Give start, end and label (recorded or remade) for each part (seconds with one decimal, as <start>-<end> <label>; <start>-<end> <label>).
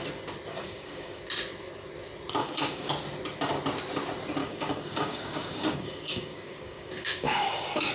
0.0-0.5 recorded; 0.5-1.2 remade; 1.2-2.4 recorded; 2.4-2.9 remade; 2.9-4.4 recorded; 4.4-7.9 remade